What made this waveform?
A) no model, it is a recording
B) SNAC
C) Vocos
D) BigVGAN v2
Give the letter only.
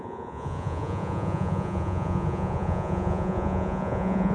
C